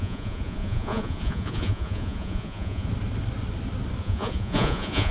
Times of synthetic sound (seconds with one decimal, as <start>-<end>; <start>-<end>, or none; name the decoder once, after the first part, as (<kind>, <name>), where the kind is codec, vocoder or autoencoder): 0.0-2.9 (vocoder, Vocos); 4.0-5.1